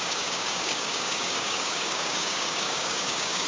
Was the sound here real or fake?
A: fake